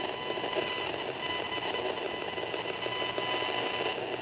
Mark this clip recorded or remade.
recorded